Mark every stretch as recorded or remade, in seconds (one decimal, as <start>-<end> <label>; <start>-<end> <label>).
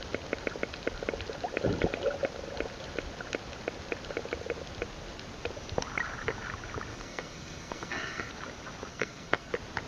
0.0-6.9 recorded; 6.9-8.3 remade; 8.3-8.9 recorded; 8.9-9.5 remade; 9.5-9.9 recorded